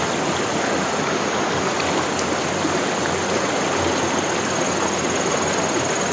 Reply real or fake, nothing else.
real